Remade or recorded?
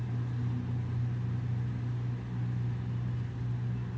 recorded